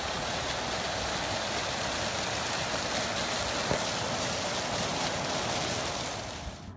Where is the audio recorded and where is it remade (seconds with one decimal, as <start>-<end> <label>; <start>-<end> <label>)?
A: 0.0-0.5 remade; 0.5-6.8 recorded